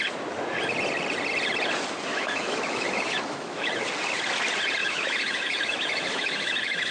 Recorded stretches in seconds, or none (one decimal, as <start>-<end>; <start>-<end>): 0.0-2.1; 3.7-4.8